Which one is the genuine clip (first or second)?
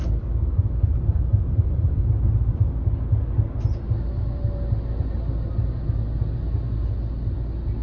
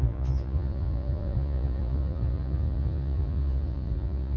first